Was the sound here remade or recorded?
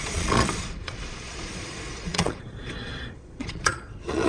remade